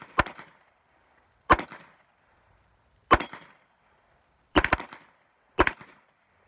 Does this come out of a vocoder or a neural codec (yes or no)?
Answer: yes